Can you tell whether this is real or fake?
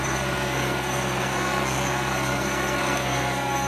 fake